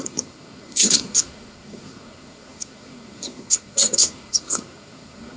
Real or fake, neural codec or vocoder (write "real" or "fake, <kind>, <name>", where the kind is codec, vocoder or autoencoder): fake, codec, SNAC